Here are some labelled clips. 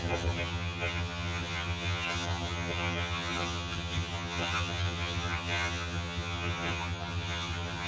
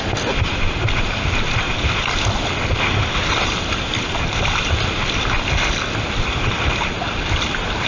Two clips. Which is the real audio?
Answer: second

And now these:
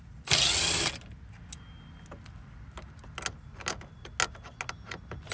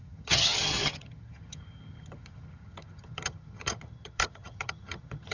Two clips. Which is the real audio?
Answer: first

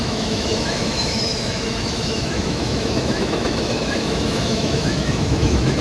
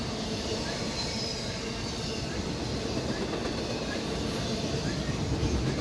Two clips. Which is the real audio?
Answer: second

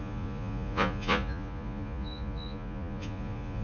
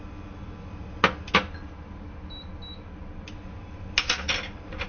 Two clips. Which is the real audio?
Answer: second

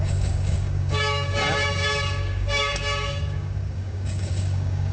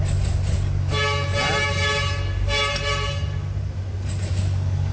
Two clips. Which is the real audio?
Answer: second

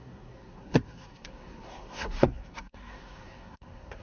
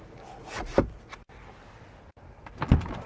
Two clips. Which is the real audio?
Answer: second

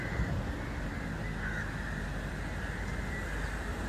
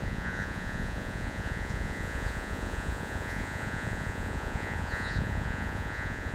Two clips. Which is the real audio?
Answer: first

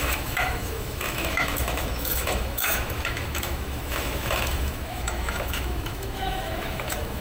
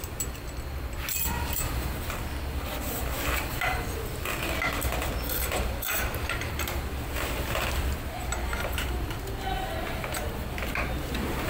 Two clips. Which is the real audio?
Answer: second